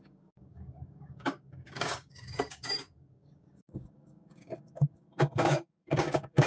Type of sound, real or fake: fake